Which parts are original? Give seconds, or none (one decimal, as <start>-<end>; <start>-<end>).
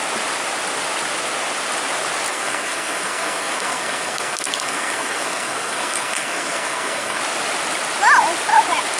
0.0-2.3; 7.2-9.0